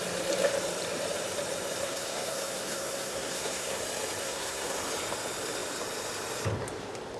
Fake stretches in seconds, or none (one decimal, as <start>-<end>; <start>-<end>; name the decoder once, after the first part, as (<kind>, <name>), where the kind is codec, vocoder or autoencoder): 1.8-3.8 (codec, SNAC); 4.2-4.8